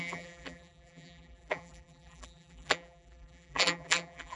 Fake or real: fake